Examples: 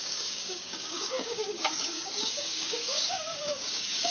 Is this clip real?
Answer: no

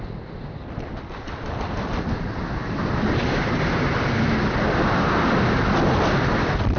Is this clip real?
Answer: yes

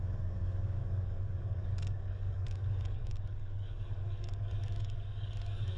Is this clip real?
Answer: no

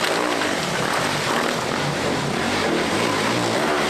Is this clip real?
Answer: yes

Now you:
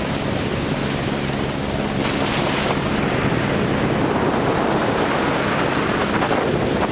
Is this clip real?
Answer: yes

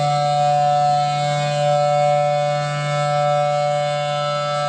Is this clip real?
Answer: yes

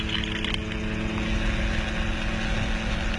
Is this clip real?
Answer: yes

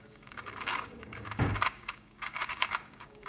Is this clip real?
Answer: no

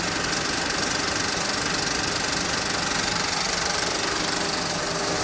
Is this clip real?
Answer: yes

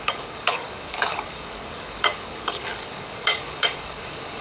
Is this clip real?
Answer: no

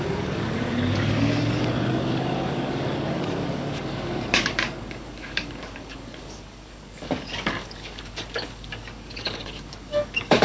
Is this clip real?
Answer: no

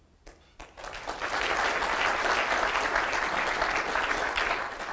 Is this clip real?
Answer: yes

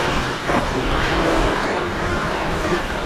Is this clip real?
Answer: no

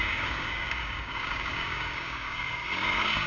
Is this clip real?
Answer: no